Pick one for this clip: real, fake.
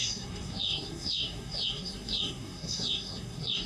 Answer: fake